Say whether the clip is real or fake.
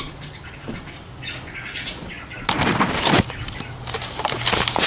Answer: real